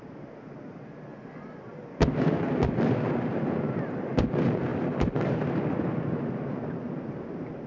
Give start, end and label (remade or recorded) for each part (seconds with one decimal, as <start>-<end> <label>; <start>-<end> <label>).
0.0-1.1 recorded; 1.1-1.9 remade; 1.9-4.7 recorded; 4.7-5.3 remade; 5.3-7.7 recorded